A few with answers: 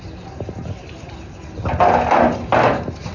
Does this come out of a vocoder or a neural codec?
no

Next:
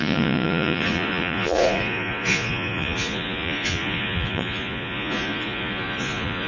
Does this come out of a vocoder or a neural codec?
yes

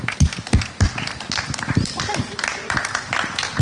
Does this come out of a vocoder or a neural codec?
no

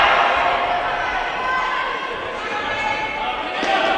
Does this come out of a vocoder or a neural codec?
no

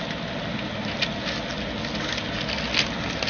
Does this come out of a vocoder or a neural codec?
no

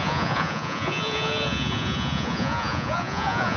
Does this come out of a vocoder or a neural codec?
yes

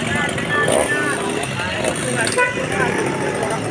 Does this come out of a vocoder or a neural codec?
no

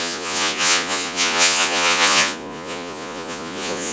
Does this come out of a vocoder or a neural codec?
yes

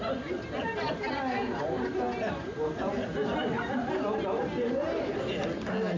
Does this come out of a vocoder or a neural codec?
no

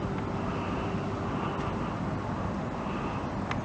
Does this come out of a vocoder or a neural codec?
no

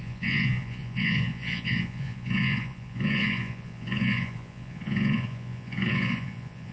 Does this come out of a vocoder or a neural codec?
yes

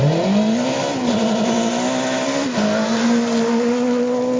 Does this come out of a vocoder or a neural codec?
no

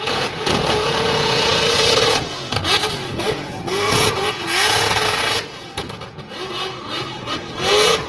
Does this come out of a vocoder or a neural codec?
yes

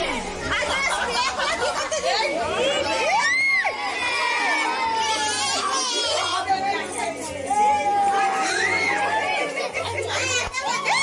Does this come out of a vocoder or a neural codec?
no